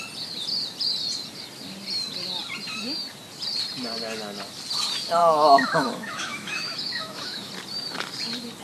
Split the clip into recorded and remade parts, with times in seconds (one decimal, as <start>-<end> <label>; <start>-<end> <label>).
0.0-5.2 recorded; 5.2-7.5 remade; 7.5-8.6 recorded